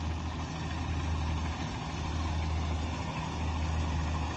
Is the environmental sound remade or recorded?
recorded